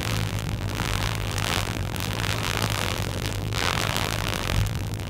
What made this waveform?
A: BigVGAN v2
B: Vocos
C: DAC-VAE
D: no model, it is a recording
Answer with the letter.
A